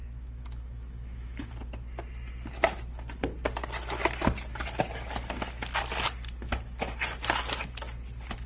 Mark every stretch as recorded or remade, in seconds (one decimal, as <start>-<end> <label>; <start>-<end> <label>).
0.0-1.5 remade; 1.5-8.5 recorded